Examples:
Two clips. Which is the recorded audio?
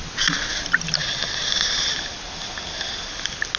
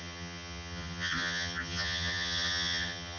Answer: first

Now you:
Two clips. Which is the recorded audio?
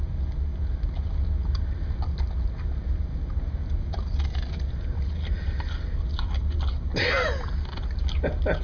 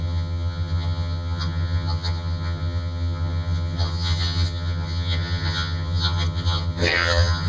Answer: first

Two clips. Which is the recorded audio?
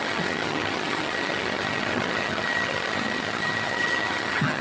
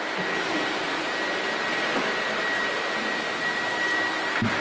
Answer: second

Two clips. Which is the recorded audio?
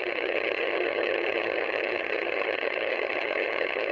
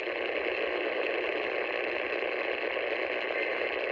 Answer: second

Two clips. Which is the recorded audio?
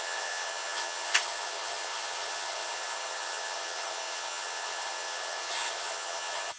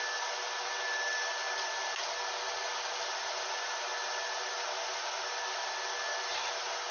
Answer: second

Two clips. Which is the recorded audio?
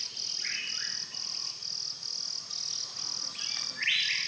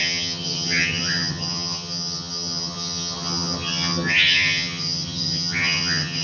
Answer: first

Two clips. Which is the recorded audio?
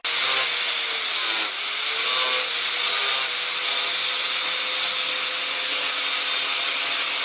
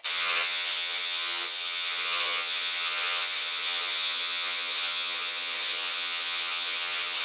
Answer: first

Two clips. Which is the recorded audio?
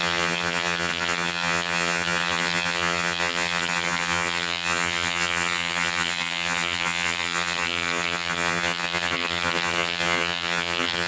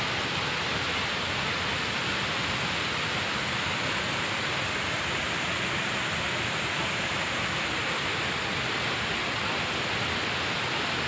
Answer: second